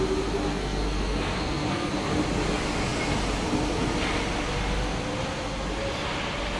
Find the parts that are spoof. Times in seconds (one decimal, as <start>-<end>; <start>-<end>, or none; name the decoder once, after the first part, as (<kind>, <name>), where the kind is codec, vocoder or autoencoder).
0.5-1.9 (codec, SNAC)